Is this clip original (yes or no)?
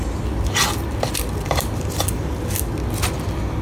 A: yes